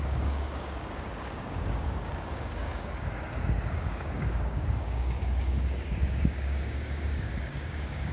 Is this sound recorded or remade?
remade